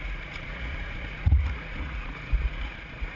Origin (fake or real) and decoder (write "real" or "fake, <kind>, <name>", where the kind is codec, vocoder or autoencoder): fake, vocoder, Vocos